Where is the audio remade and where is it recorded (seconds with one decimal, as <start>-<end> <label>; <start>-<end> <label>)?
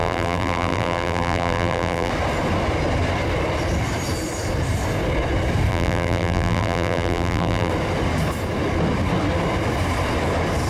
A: 0.0-2.1 remade; 2.1-5.7 recorded; 5.7-7.7 remade; 7.7-10.7 recorded